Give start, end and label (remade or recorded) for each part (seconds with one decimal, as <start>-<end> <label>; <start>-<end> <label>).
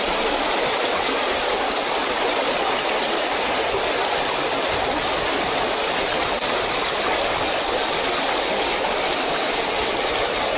0.0-10.6 recorded